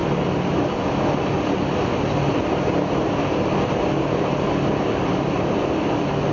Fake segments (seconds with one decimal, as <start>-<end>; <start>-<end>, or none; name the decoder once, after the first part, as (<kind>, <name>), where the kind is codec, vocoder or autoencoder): none